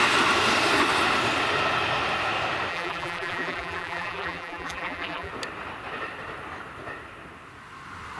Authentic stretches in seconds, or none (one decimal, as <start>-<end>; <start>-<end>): 0.0-2.7; 5.3-8.2